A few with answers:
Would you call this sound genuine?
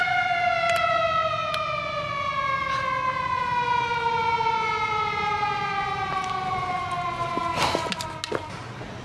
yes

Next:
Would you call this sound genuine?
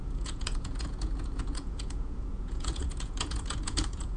no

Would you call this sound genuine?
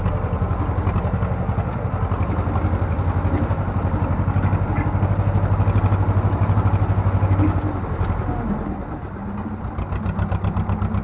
yes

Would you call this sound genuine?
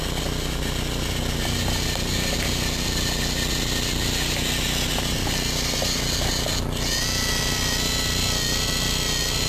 yes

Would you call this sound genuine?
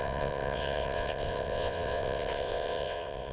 no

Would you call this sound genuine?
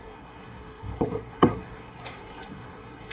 no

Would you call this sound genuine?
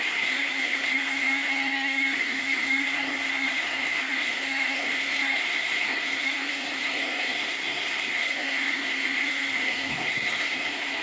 no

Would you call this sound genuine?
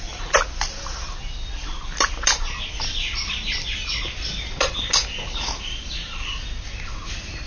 yes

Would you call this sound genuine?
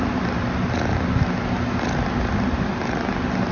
yes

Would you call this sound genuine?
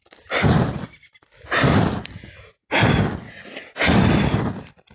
yes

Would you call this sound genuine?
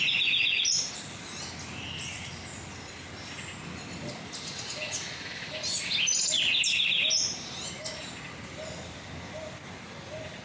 yes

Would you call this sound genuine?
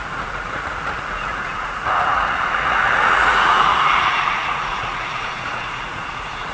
no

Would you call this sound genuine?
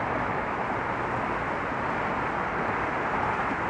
yes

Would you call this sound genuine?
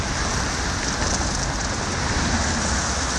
yes